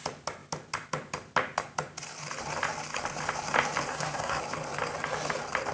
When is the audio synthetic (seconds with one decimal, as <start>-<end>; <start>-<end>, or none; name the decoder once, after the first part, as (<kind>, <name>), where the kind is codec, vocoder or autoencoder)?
3.9-4.4 (codec, SNAC)